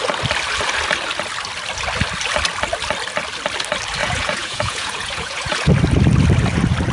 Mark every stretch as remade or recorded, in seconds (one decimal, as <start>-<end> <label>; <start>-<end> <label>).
0.0-4.0 recorded; 4.0-5.7 remade; 5.7-6.9 recorded